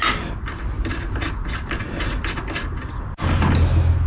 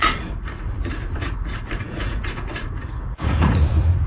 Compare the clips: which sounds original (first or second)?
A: first